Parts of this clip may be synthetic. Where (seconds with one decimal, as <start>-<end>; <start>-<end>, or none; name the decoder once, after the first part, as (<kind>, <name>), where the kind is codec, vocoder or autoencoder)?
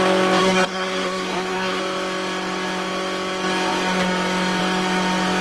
0.4-1.8 (codec, SNAC)